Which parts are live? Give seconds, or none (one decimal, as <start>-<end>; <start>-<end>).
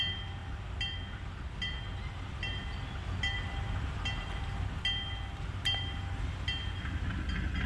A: 0.0-7.7